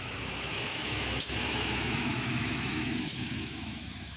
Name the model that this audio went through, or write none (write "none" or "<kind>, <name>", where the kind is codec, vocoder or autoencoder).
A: autoencoder, DAC-VAE